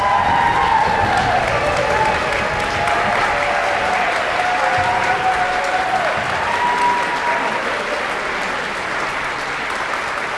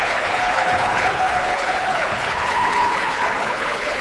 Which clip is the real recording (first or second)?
first